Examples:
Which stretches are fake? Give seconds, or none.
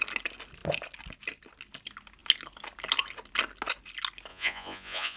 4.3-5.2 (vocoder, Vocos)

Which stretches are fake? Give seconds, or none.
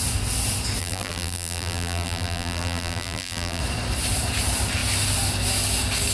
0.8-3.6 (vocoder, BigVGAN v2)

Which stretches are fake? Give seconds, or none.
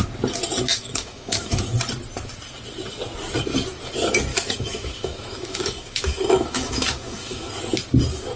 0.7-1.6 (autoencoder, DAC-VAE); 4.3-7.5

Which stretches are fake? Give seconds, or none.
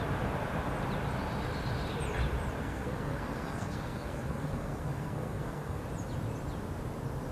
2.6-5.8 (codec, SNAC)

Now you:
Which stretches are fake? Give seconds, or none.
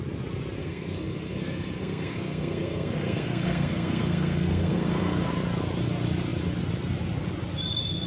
0.6-5.3 (codec, SNAC)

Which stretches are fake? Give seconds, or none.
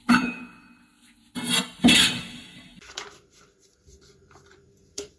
0.0-5.2 (vocoder, BigVGAN v2)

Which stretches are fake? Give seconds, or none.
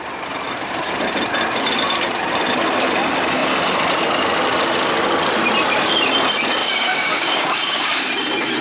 6.6-8.1 (codec, DAC)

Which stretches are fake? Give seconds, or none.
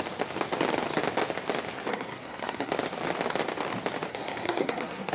1.9-2.7 (codec, SNAC); 4.1-5.1